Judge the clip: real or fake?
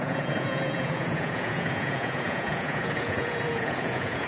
fake